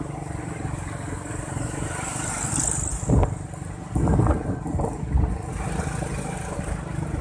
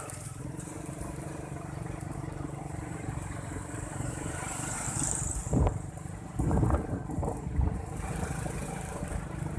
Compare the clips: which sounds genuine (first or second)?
first